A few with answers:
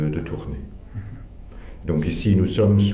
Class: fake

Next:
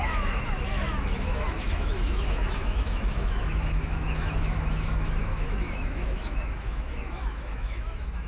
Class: fake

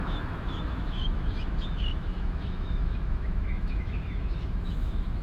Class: fake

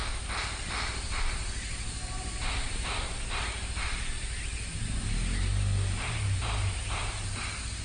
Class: real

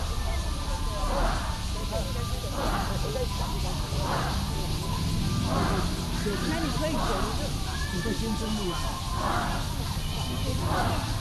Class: real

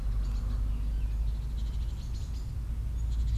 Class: real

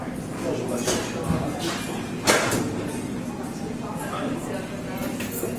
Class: real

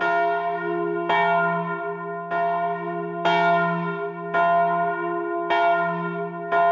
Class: real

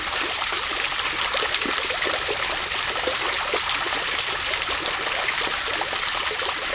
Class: real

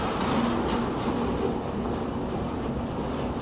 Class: real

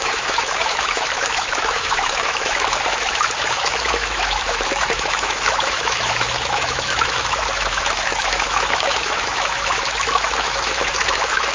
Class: fake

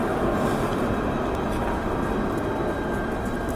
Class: real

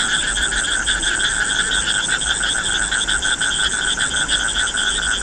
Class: real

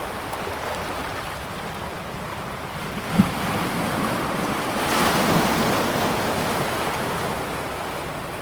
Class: real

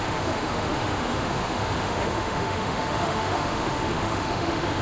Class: fake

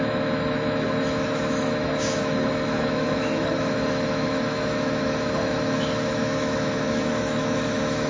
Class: fake